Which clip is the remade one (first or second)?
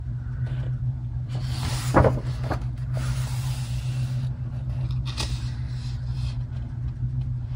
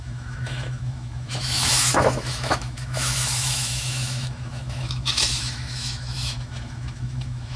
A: second